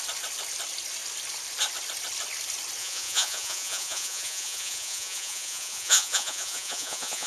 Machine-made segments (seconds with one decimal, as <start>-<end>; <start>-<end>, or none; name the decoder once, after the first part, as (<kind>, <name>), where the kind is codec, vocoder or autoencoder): 2.8-7.3 (vocoder, Vocos)